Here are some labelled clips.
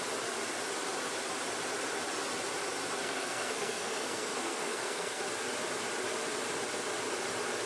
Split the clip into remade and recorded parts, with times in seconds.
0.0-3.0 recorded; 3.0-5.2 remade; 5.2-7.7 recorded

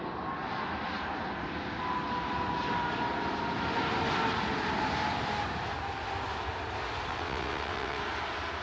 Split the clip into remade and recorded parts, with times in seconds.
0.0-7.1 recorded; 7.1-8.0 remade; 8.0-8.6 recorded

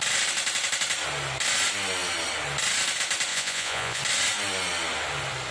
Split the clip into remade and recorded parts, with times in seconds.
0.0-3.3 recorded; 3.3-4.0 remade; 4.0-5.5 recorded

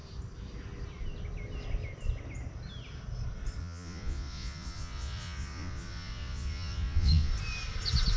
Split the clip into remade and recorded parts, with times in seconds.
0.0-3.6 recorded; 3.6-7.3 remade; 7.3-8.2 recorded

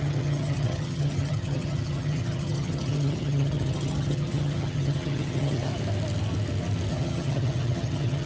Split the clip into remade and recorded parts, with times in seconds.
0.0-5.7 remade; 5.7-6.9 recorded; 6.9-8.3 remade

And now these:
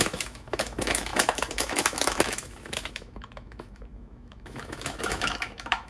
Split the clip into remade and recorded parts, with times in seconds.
0.0-5.9 remade

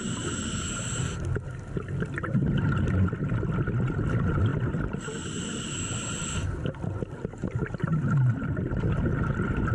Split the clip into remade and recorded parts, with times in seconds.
0.0-9.7 recorded

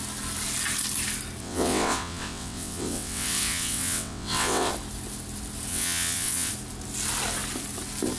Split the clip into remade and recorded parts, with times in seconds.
0.0-1.4 recorded; 1.4-4.7 remade; 4.7-5.7 recorded; 5.7-6.5 remade; 6.5-8.2 recorded